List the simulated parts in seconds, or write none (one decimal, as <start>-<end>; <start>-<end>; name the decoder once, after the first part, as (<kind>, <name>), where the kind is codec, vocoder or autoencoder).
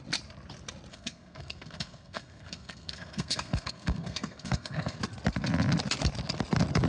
0.9-5.0 (codec, SNAC)